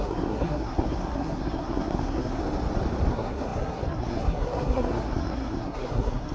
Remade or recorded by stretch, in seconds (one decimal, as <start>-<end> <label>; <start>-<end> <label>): 0.0-2.4 remade; 2.4-3.1 recorded; 3.1-6.3 remade